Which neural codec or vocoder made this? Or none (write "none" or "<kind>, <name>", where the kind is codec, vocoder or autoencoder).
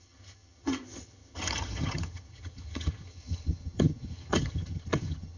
vocoder, HiFi-GAN